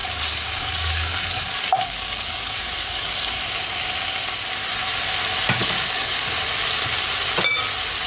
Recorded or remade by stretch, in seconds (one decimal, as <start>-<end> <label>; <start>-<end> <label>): 0.0-3.4 remade; 3.4-5.6 recorded; 5.6-6.3 remade; 6.3-8.1 recorded